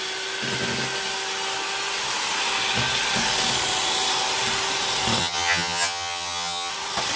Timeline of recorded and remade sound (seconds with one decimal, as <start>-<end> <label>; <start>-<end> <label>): 0.0-5.2 recorded; 5.2-6.7 remade; 6.7-7.2 recorded

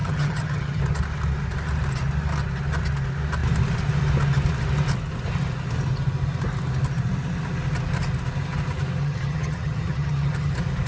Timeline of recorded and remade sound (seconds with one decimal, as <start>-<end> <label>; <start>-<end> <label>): 0.0-0.8 remade; 0.8-9.0 recorded; 9.0-10.5 remade; 10.5-10.9 recorded

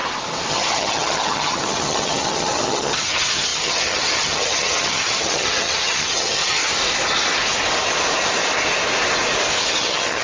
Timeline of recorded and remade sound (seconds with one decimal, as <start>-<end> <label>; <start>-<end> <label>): 0.0-0.5 recorded; 0.5-6.7 remade; 6.7-9.7 recorded; 9.7-10.2 remade

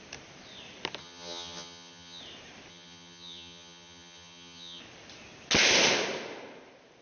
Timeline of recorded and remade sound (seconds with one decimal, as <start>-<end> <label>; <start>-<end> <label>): 0.0-1.0 recorded; 1.0-2.2 remade; 2.2-2.7 recorded; 2.7-4.8 remade; 4.8-7.0 recorded

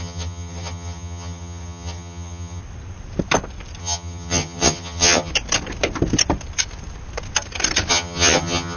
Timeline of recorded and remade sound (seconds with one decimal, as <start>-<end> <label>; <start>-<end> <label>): 0.0-2.6 remade; 2.6-3.8 recorded; 3.8-5.3 remade; 5.3-7.9 recorded; 7.9-8.8 remade

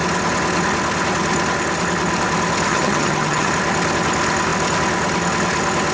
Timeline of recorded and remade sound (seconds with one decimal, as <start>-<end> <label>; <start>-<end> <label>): 0.0-2.7 recorded; 2.7-3.5 remade; 3.5-5.9 recorded